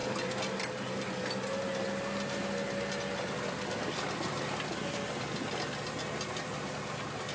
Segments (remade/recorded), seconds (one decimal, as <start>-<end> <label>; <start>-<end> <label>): 0.0-7.3 recorded